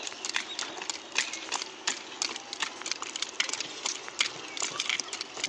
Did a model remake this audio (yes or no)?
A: no